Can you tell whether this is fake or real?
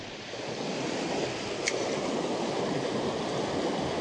real